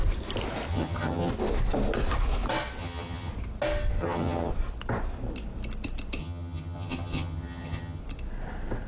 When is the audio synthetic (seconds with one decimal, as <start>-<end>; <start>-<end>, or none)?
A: 0.7-1.3; 2.8-3.3; 4.0-4.5; 6.2-8.0